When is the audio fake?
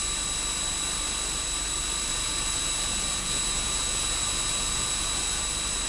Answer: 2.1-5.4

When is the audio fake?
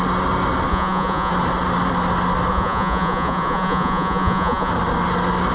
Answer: 0.7-1.3; 2.5-4.7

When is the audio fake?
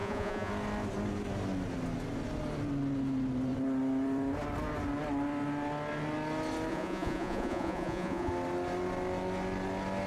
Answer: 0.0-0.5; 6.7-8.3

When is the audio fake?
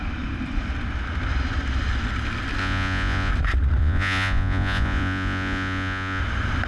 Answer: 2.6-3.3; 3.8-6.2